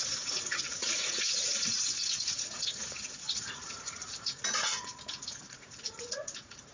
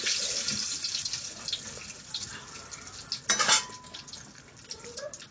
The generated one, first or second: first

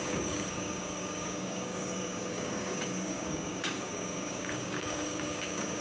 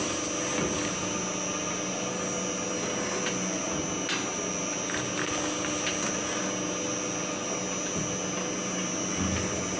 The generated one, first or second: first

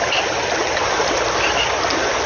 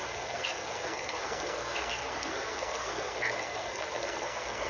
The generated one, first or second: second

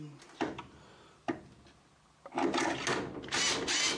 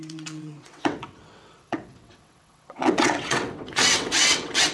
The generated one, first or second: second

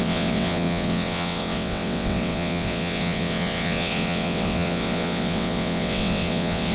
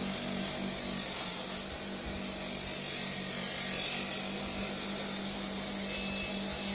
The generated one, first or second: first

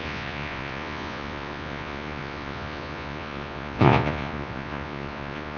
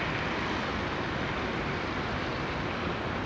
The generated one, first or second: first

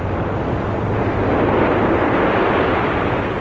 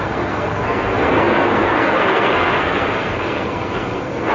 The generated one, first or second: second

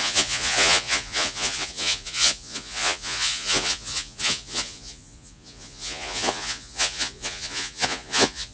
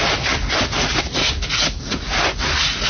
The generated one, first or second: first